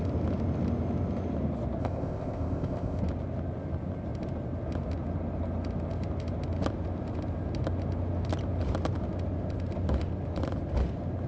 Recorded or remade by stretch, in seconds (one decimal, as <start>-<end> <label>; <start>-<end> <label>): 0.0-1.8 recorded; 1.8-3.0 remade; 3.0-11.3 recorded